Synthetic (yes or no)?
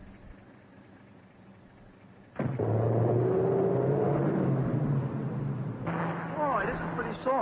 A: no